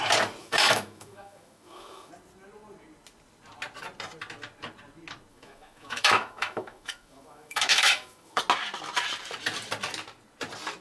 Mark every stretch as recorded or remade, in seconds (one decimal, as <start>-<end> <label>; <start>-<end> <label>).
0.0-0.4 recorded; 0.4-2.1 remade; 2.1-5.3 recorded; 5.3-8.4 remade; 8.4-10.8 recorded